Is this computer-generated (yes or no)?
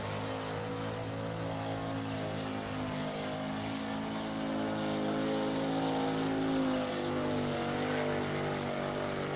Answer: no